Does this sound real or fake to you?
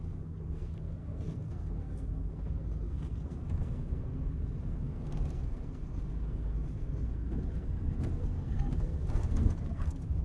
fake